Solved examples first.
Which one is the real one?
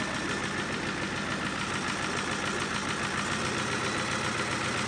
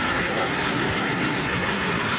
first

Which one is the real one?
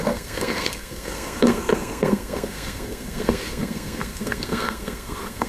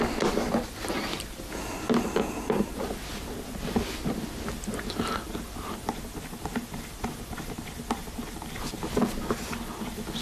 second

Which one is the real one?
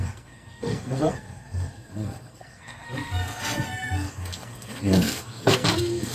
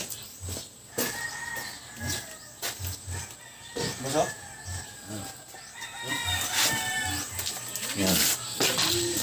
second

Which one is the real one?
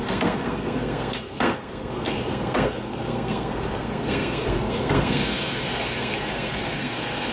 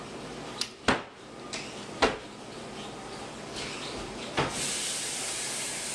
second